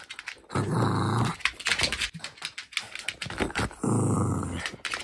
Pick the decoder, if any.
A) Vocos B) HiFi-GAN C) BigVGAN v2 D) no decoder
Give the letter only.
D